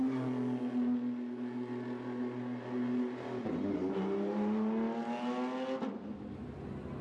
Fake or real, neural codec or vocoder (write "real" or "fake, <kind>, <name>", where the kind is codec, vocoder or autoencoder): real